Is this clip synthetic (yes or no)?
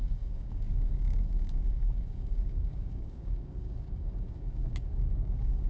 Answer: yes